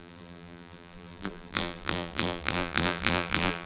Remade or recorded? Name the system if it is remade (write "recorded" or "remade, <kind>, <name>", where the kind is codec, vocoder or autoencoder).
remade, vocoder, BigVGAN v2